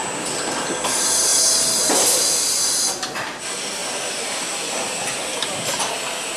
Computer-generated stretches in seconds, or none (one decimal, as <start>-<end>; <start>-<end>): none